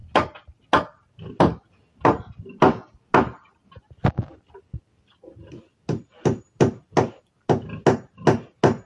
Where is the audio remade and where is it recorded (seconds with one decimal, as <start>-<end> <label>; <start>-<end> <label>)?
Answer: 0.0-8.9 recorded